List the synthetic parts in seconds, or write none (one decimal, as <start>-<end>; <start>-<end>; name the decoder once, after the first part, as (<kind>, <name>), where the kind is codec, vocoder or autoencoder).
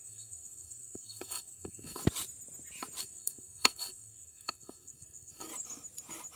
0.0-2.0 (codec, SNAC); 3.0-5.5